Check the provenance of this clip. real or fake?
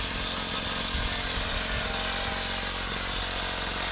real